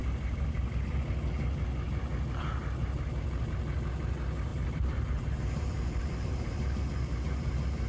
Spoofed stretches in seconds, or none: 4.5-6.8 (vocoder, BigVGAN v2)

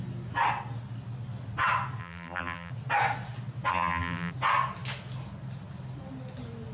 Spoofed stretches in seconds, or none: 2.0-2.7 (vocoder, BigVGAN v2); 3.7-4.3

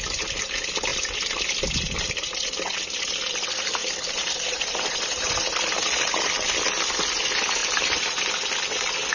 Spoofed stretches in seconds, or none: 3.8-5.3 (vocoder, BigVGAN v2)

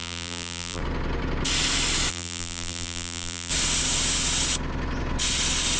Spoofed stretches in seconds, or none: 0.0-0.8 (vocoder, BigVGAN v2); 2.1-3.5

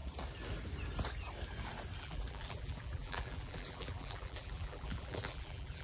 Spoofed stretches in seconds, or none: 2.0-5.8 (vocoder, BigVGAN v2)

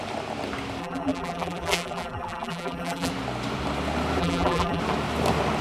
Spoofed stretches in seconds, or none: 0.8-3.1 (vocoder, BigVGAN v2); 4.2-4.8